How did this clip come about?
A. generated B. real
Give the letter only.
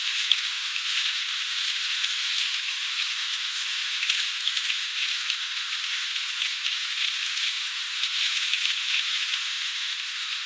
A